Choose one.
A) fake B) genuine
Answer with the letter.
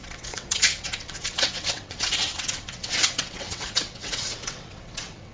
A